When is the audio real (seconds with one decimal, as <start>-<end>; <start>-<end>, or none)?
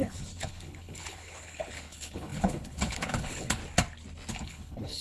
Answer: 3.6-4.3